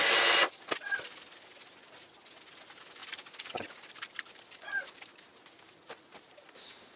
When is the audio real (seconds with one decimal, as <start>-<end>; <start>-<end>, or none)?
0.0-7.0